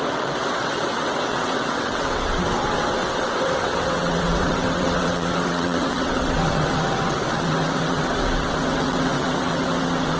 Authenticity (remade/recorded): remade